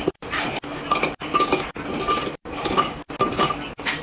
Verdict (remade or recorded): recorded